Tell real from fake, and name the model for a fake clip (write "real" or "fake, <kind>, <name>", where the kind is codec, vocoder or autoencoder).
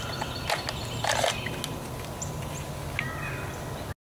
real